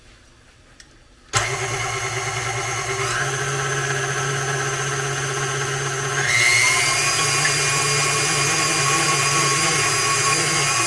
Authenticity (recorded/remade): recorded